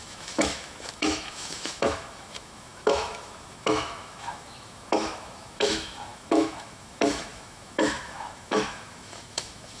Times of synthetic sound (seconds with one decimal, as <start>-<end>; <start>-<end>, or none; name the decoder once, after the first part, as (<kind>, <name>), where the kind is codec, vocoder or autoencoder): 0.0-9.8 (autoencoder, DAC-VAE)